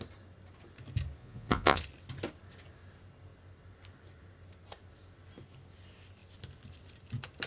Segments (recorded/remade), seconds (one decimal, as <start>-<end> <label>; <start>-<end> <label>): 0.0-1.2 recorded; 1.2-1.8 remade; 1.8-7.5 recorded